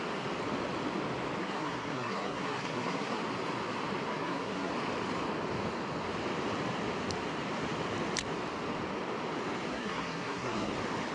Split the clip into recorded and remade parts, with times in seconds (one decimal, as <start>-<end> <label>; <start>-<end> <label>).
0.0-1.4 recorded; 1.4-3.2 remade; 3.2-4.1 recorded; 4.1-4.7 remade; 4.7-9.7 recorded; 9.7-10.7 remade; 10.7-11.1 recorded